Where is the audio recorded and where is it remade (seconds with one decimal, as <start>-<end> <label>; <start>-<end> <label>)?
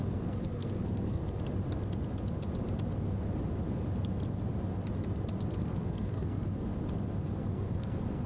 0.0-1.2 remade; 1.2-5.5 recorded; 5.5-6.7 remade; 6.7-7.2 recorded; 7.2-8.3 remade